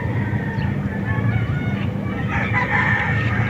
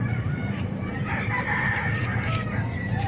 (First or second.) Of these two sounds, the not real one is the second